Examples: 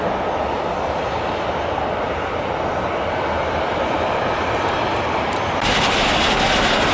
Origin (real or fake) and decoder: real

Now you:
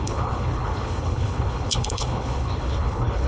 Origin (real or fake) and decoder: fake, codec, HILCodec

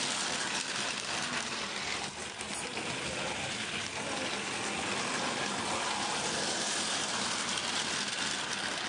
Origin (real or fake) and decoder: real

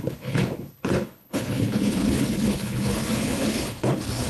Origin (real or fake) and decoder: fake, codec, HILCodec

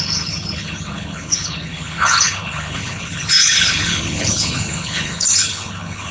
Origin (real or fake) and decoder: fake, codec, HILCodec